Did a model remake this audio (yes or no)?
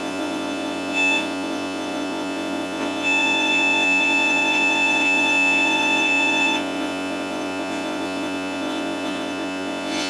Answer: yes